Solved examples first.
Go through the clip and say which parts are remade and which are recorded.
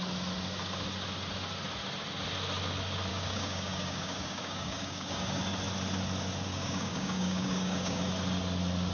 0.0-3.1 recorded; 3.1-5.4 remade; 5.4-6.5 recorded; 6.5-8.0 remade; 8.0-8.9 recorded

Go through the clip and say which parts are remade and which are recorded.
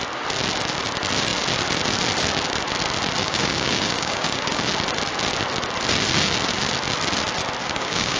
0.0-3.2 recorded; 3.2-4.7 remade; 4.7-7.6 recorded; 7.6-8.2 remade